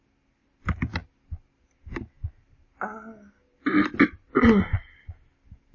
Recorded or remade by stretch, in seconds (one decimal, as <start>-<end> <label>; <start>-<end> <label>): 0.0-5.7 recorded